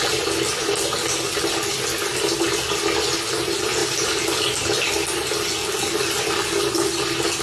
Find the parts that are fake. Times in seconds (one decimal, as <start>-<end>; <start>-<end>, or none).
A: none